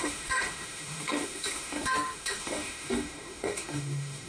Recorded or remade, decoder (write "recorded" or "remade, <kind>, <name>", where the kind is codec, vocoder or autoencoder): remade, autoencoder, DAC-VAE